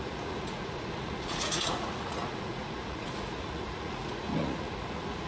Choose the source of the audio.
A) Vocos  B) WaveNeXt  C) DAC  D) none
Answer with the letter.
A